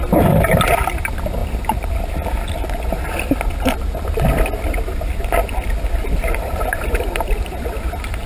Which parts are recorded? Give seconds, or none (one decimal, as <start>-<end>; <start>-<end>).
0.0-8.3